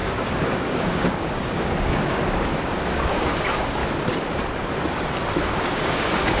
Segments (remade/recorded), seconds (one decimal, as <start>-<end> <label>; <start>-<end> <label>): 0.0-3.8 remade; 3.8-5.5 recorded; 5.5-6.4 remade